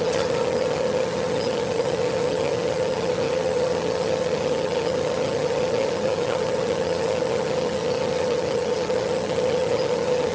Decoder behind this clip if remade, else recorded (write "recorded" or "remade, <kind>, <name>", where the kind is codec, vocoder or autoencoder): remade, vocoder, HiFi-GAN